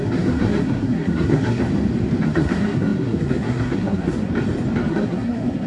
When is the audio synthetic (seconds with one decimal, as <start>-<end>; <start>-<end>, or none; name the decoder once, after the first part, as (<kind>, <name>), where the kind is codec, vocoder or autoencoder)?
0.0-1.6 (codec, SNAC); 2.2-4.3; 4.9-5.7